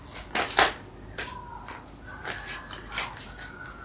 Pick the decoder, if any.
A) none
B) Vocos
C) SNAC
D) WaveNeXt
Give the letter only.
A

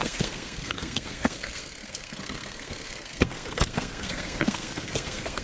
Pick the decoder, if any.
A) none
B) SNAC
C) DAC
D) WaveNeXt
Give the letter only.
B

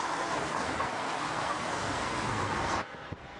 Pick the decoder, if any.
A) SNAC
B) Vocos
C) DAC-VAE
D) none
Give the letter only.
A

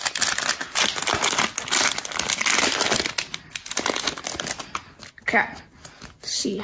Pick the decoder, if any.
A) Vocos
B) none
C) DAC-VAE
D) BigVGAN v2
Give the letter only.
B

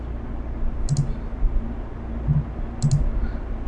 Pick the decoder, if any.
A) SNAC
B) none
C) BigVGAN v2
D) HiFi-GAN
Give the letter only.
B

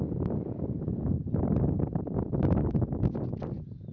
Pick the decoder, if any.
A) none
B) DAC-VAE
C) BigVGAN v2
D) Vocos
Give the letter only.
A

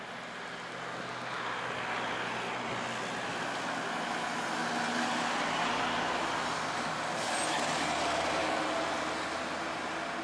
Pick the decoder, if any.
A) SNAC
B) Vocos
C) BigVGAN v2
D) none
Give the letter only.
D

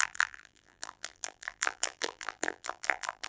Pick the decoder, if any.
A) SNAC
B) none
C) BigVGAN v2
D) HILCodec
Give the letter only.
C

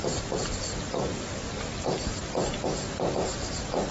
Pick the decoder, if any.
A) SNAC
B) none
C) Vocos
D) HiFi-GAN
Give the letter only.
B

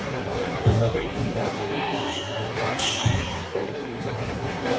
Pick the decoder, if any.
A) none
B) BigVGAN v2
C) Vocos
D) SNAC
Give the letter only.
D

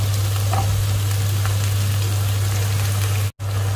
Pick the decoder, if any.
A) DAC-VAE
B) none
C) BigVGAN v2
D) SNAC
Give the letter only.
B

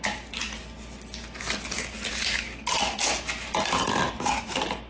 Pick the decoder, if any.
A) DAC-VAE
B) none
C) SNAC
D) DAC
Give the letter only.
B